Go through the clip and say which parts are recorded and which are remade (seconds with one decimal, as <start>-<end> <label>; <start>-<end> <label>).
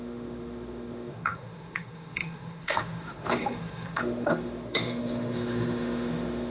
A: 0.0-6.5 remade